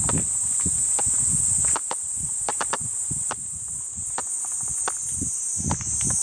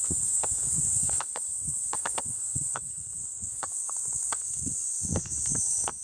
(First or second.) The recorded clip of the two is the first